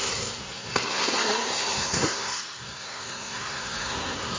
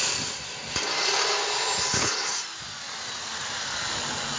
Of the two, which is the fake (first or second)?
first